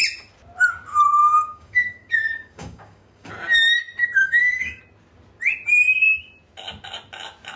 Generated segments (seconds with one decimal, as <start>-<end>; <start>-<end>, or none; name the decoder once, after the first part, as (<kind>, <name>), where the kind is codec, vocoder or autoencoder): 1.2-3.3 (codec, DAC); 4.2-4.8